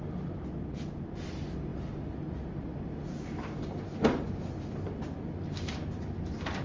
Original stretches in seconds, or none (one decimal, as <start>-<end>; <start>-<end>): 0.0-6.6